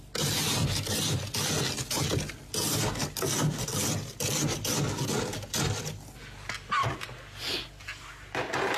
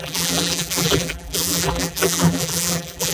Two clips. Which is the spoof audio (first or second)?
second